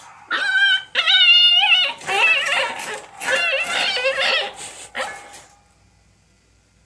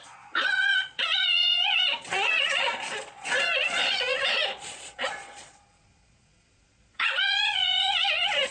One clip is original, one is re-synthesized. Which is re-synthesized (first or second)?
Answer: second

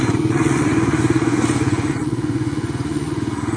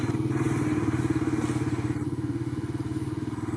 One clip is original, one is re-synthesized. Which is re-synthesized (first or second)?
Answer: first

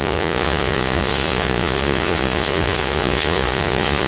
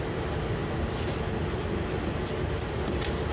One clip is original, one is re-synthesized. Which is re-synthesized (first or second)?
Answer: first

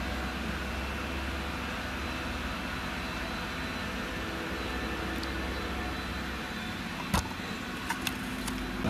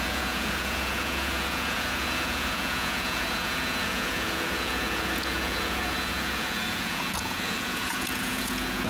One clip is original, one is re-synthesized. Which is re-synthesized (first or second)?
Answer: second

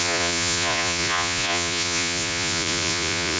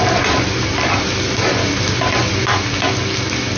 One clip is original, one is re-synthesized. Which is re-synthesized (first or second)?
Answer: first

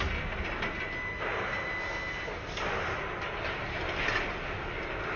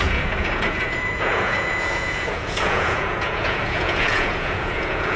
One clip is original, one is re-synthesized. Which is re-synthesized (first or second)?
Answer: second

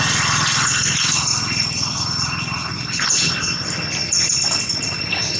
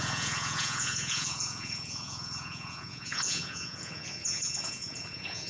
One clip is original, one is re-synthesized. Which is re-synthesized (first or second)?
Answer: second